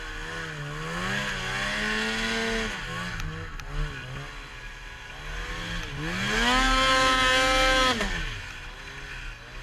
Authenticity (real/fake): real